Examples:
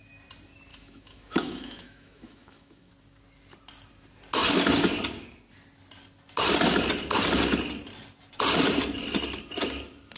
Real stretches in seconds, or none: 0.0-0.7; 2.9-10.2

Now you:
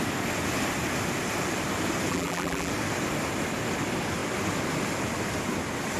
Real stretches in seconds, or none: 0.0-2.1; 2.7-6.0

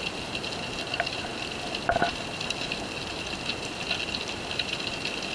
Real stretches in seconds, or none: 0.0-5.3

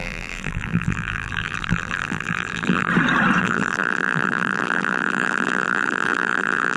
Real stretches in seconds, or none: 2.9-3.4

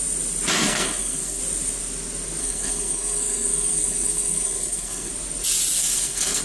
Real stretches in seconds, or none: 0.0-0.6; 1.4-2.4; 5.1-5.8

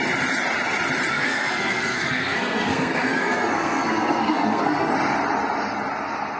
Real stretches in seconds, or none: 0.0-1.1; 4.9-6.4

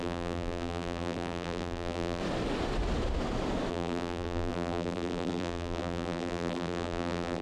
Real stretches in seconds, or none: 2.2-3.7

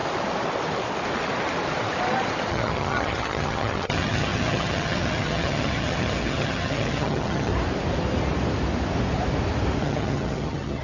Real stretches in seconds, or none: 0.0-2.5; 7.5-9.8